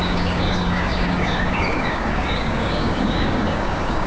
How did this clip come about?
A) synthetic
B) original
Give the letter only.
A